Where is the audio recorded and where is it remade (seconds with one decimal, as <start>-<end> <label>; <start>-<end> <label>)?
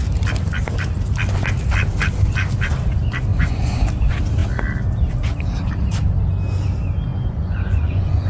0.0-3.3 recorded; 3.3-3.8 remade; 3.8-7.1 recorded; 7.1-8.3 remade